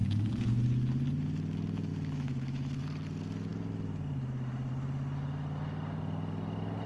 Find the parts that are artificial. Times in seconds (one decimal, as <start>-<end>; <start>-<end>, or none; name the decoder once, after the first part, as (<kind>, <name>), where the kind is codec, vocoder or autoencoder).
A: 1.9-2.8 (autoencoder, DAC-VAE)